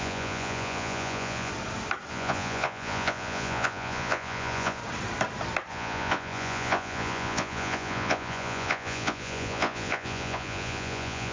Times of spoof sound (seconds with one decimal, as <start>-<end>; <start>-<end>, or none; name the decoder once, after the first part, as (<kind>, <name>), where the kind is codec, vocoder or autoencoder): 0.0-1.5 (vocoder, Vocos); 2.1-4.8; 5.7-11.3